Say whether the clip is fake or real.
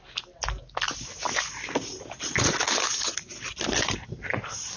real